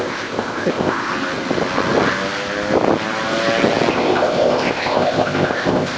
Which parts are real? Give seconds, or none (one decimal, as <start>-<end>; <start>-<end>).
1.1-3.9